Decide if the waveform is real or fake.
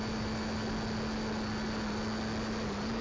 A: real